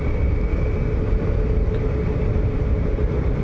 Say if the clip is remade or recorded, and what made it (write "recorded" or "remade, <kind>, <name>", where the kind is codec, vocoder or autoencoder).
recorded